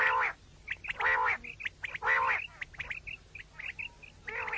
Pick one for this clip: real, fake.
real